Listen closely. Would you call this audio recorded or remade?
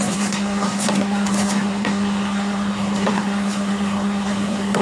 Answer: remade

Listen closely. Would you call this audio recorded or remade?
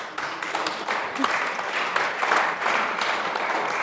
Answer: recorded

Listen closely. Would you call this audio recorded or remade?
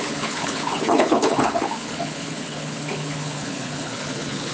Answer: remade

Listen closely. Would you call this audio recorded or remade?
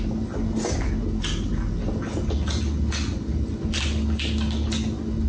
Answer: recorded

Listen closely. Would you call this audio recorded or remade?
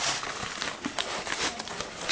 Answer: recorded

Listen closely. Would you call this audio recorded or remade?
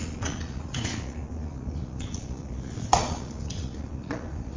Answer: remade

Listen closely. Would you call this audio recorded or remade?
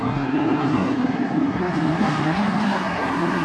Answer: remade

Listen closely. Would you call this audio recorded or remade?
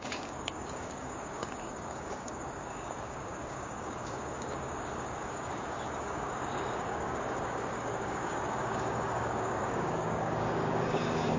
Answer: remade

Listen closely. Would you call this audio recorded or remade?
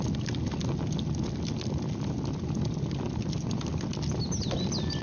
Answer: recorded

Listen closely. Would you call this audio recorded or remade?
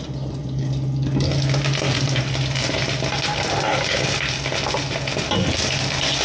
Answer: recorded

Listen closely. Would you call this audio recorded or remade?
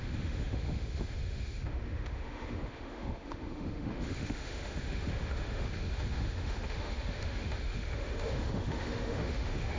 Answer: remade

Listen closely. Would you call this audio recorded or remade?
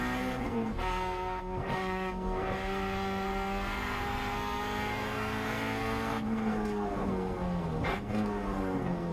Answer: remade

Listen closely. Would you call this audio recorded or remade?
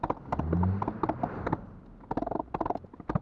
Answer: recorded